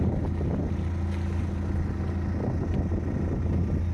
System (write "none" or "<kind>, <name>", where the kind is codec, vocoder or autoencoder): none